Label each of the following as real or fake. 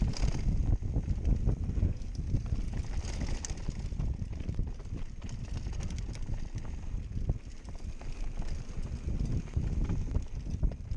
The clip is real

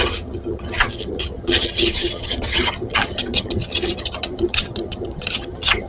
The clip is fake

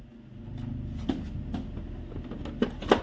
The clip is real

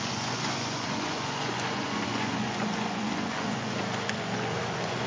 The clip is fake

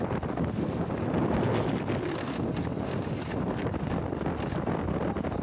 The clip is real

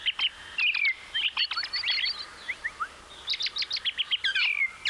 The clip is real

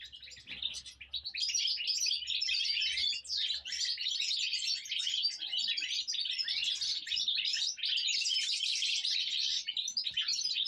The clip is real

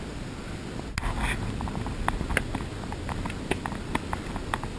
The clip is real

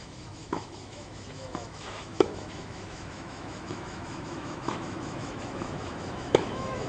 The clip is fake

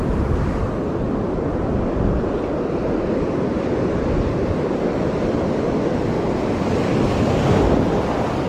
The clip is real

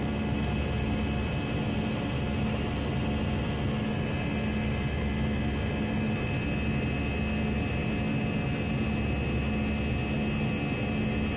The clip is real